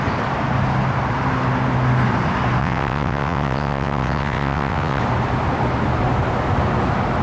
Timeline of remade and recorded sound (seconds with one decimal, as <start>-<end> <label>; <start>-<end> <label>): 0.0-2.6 recorded; 2.6-5.0 remade; 5.0-7.2 recorded